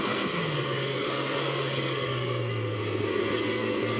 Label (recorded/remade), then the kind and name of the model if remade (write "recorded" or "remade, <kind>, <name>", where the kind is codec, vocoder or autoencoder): remade, codec, SNAC